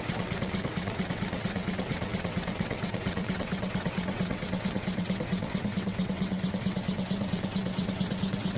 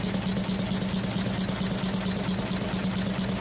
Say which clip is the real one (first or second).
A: second